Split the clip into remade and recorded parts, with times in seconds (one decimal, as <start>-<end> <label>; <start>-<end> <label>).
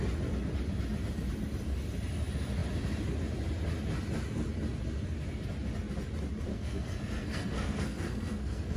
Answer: 0.0-6.5 recorded; 6.5-8.8 remade